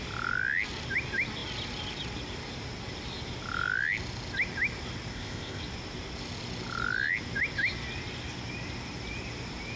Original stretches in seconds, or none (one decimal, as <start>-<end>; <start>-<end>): 0.0-5.1; 5.6-9.8